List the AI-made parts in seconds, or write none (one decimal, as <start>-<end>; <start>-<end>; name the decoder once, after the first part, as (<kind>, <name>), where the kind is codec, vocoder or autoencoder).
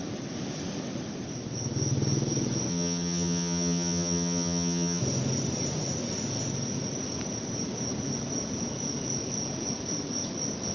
2.7-5.0 (vocoder, HiFi-GAN)